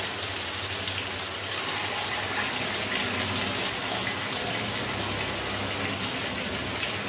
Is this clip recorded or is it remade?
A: recorded